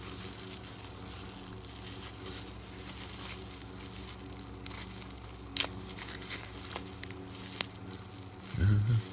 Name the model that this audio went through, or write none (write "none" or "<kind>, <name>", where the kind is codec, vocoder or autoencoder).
none